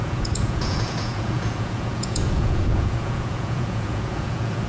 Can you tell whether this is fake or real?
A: fake